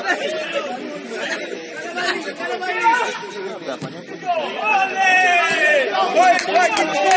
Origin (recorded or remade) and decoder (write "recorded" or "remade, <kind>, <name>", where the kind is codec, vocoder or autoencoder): recorded